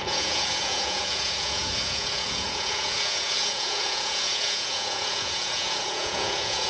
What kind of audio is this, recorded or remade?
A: remade